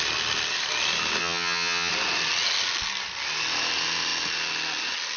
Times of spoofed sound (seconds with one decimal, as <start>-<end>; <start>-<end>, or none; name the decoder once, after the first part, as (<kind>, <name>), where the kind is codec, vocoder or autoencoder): 1.2-1.9 (vocoder, HiFi-GAN)